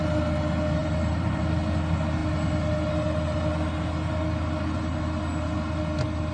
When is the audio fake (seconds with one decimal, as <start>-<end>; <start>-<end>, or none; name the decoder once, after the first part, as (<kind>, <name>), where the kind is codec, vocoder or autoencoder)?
0.8-1.4 (vocoder, BigVGAN v2)